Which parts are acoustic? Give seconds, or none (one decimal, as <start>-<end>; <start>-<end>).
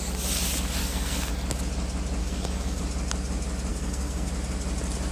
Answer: 0.0-0.8; 1.3-2.2; 2.8-3.7; 4.3-5.1